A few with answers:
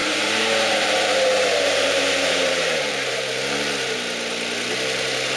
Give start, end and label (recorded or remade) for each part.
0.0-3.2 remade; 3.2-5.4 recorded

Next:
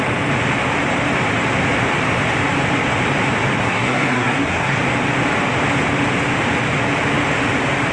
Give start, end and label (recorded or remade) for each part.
0.0-3.6 recorded; 3.6-4.8 remade; 4.8-7.9 recorded

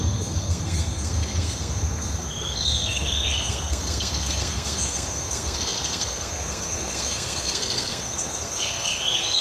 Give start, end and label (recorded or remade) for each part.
0.0-9.4 remade

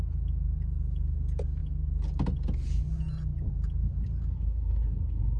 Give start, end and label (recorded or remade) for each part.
0.0-4.3 recorded; 4.3-5.4 remade